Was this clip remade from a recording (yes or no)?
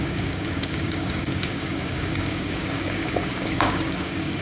yes